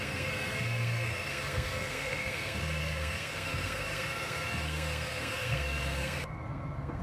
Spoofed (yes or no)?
yes